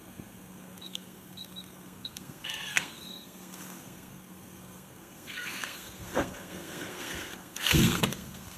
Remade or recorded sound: remade